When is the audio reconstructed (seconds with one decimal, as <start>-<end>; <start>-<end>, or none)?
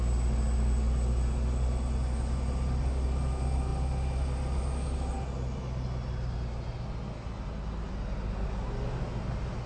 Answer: none